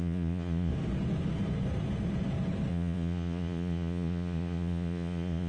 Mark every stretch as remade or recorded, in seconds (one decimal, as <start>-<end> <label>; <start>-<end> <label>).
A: 0.0-0.7 remade; 0.7-2.7 recorded; 2.7-5.5 remade